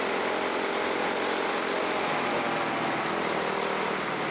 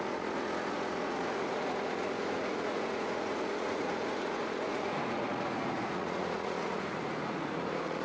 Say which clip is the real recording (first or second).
first